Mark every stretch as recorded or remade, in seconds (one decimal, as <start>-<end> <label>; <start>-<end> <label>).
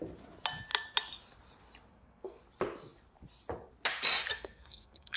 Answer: 0.0-1.9 recorded; 1.9-2.4 remade; 2.4-4.3 recorded; 4.3-5.2 remade